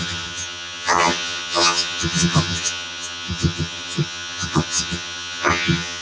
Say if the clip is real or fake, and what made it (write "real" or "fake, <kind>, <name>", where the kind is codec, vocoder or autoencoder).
fake, vocoder, HiFi-GAN